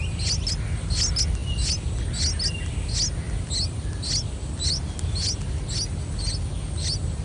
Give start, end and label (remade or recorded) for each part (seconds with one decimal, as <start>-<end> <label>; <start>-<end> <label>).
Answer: 0.0-7.2 recorded